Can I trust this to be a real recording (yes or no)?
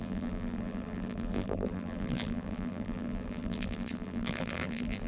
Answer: no